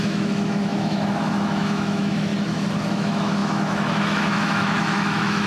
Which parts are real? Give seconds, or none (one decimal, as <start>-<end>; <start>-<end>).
2.3-2.9

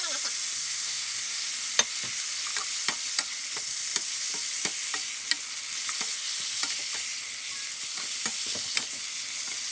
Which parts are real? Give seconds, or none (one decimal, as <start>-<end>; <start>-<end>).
0.0-0.6; 1.5-9.7

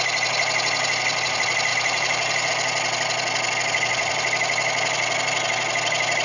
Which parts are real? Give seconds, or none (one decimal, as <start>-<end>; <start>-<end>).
0.0-1.7; 2.5-6.2

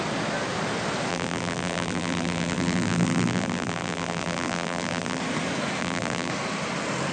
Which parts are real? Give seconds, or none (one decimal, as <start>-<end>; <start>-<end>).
0.0-1.1; 5.2-5.8; 6.3-7.1

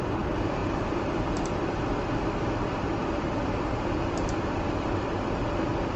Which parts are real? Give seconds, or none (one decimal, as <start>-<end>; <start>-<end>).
0.0-0.6; 2.0-6.0